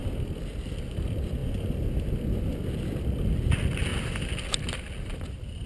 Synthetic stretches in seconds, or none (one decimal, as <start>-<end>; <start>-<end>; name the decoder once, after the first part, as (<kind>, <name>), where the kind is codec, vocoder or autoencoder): none